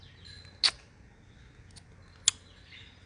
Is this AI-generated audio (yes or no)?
no